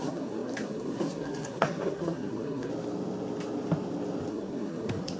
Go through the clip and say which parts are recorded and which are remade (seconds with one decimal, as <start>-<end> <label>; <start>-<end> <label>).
0.0-2.7 remade; 2.7-4.3 recorded; 4.3-5.2 remade